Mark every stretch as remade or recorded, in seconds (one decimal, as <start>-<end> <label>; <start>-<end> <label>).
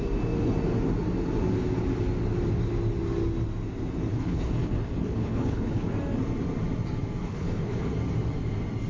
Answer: 0.0-4.1 recorded; 4.1-5.9 remade; 5.9-7.2 recorded; 7.2-7.9 remade; 7.9-8.9 recorded